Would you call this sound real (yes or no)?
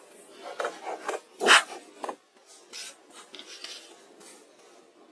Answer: yes